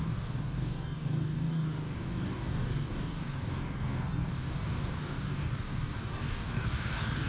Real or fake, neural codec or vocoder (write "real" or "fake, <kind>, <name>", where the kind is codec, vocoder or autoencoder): fake, codec, DAC